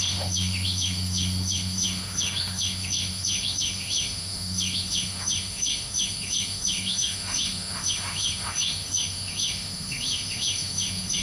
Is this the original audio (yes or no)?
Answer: no